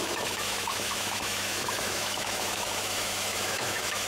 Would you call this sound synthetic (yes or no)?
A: yes